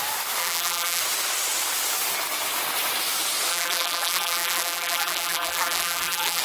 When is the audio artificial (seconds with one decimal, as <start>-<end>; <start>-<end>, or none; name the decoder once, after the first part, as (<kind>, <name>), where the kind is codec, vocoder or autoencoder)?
0.4-1.0 (vocoder, BigVGAN v2); 3.5-6.4